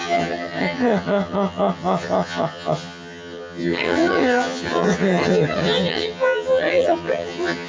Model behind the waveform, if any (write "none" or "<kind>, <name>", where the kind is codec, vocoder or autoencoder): vocoder, HiFi-GAN